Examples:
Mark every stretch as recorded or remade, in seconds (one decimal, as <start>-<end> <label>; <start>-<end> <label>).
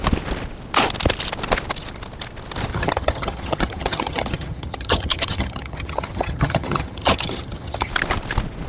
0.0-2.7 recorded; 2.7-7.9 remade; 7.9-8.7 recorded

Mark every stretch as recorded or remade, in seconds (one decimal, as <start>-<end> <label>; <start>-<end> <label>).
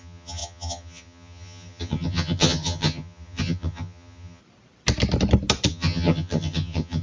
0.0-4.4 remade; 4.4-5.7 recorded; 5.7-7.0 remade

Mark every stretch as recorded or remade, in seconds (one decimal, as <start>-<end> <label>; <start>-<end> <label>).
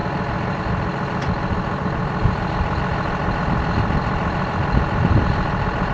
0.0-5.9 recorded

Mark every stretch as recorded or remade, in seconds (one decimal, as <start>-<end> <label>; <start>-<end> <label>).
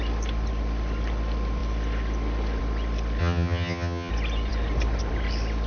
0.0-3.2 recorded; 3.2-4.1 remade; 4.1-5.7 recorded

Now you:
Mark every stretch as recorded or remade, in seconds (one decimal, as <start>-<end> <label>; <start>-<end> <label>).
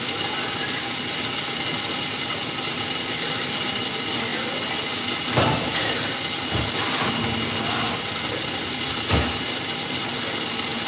0.0-10.9 recorded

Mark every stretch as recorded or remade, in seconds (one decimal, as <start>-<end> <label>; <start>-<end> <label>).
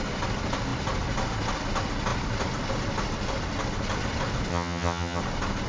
0.0-4.5 recorded; 4.5-5.2 remade; 5.2-5.7 recorded